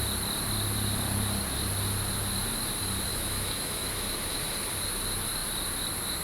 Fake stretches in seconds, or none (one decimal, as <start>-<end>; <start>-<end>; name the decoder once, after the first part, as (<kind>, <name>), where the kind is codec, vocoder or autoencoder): 3.1-4.4 (autoencoder, DAC-VAE)